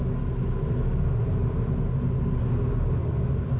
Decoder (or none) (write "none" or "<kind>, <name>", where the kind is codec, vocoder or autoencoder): none